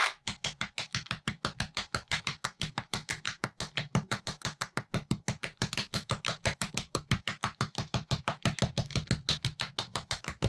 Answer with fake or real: fake